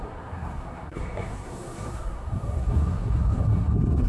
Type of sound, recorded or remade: remade